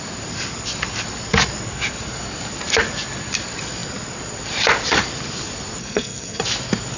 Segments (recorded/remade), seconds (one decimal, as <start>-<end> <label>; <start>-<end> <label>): 0.0-5.8 recorded; 5.8-6.4 remade; 6.4-7.0 recorded